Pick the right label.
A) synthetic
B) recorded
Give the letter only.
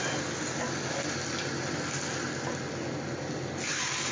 B